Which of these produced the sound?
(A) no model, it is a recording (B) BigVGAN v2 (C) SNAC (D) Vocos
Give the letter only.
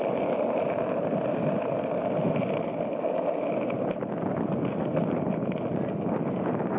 A